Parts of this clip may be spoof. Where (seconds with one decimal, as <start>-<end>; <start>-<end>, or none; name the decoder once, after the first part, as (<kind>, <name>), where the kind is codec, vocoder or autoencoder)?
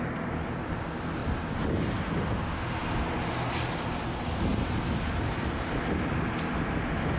none